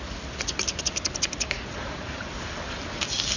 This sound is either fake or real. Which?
real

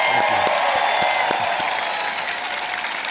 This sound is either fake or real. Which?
real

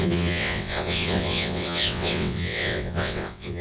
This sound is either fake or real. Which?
fake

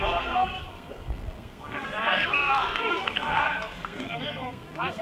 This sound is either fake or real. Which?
fake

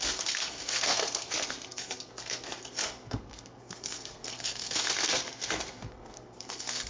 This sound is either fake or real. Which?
fake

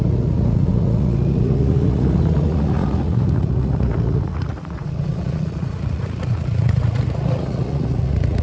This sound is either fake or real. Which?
fake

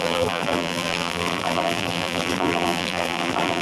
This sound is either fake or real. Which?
fake